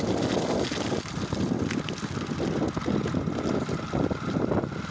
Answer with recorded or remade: recorded